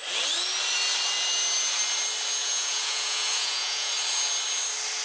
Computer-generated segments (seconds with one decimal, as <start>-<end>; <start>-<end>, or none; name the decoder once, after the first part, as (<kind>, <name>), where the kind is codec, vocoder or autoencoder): 2.4-3.9 (vocoder, Vocos)